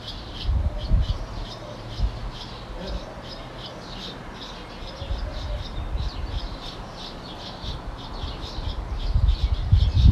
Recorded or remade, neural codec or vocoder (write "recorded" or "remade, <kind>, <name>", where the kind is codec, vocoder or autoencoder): recorded